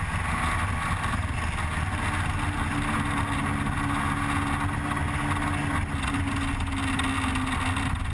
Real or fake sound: real